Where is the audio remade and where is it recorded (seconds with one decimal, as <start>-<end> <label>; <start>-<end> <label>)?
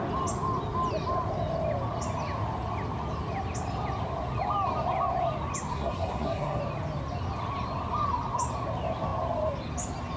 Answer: 0.0-5.7 recorded; 5.7-6.6 remade; 6.6-10.2 recorded